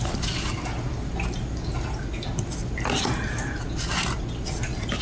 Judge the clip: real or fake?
real